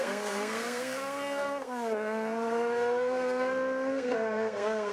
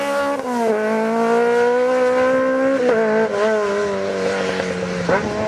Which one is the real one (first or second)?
second